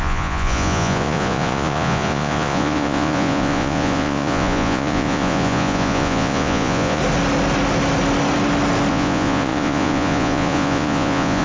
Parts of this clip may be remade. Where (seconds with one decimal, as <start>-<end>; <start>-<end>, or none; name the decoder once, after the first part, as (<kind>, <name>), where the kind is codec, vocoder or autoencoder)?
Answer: 0.0-7.0 (vocoder, Vocos); 8.9-11.4